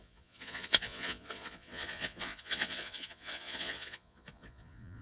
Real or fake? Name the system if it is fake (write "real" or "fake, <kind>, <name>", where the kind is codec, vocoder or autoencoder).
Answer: fake, vocoder, Vocos